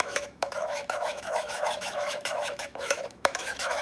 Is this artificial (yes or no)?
yes